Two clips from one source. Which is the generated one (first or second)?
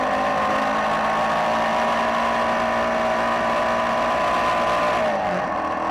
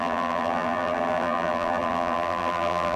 second